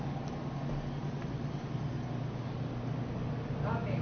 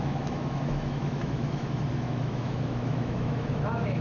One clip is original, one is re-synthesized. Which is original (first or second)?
first